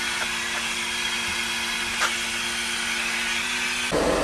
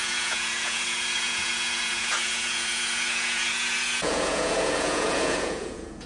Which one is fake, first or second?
second